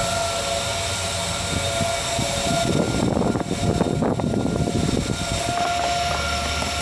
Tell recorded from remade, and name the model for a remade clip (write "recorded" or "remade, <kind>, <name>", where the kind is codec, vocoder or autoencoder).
recorded